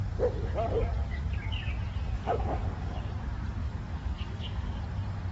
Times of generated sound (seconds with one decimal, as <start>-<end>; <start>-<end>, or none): 2.2-3.1; 3.6-4.8